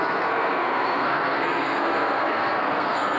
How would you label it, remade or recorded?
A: remade